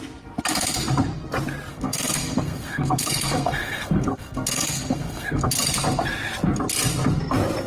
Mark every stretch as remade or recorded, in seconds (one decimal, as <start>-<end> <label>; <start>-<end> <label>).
0.0-1.7 recorded; 1.7-5.5 remade; 5.5-7.7 recorded